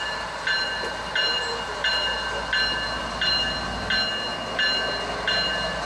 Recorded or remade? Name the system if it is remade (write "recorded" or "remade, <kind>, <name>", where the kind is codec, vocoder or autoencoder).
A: recorded